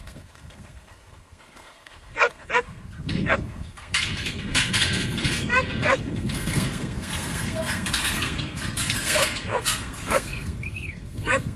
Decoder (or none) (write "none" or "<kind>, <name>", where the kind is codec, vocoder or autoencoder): codec, SNAC